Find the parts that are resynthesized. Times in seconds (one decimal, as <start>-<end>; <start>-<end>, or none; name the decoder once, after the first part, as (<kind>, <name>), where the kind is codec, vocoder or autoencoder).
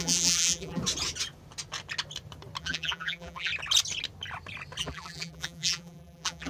0.0-0.8 (vocoder, BigVGAN v2); 2.6-3.5; 4.8-6.5